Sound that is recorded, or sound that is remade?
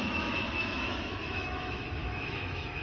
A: remade